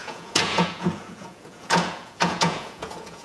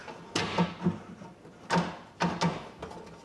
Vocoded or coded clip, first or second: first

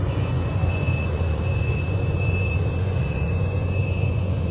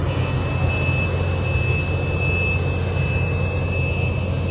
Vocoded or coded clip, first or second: first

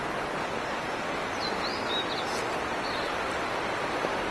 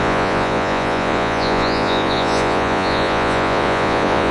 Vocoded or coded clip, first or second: second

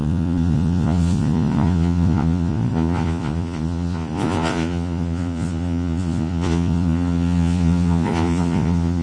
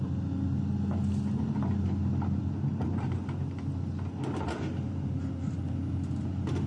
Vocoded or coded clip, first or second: first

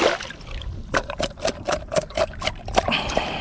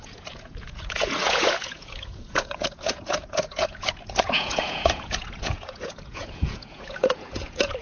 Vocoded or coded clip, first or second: second